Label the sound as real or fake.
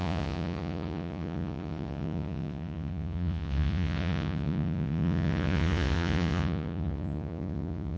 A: fake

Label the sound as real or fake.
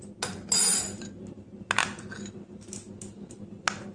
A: real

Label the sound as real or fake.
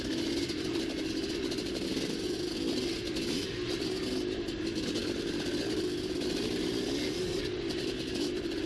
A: real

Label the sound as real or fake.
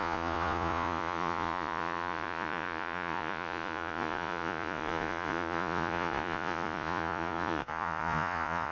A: fake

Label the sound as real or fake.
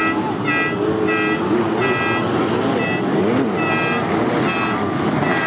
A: real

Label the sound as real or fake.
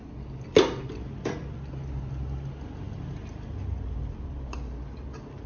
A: real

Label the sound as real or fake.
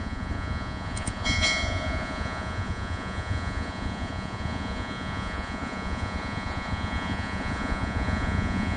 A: fake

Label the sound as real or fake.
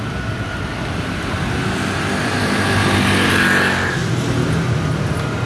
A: real